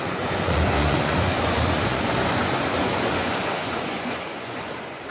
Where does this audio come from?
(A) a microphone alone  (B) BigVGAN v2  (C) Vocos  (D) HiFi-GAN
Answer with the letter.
C